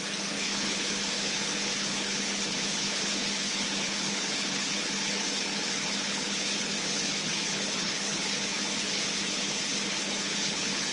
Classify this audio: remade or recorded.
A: remade